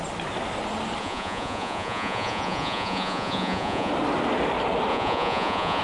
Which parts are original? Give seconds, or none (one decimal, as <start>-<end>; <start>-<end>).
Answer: 0.0-1.0; 3.9-4.9